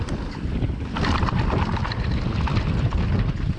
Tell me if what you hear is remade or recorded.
recorded